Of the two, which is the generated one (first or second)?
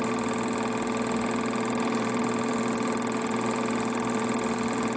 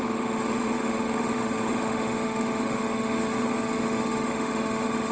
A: second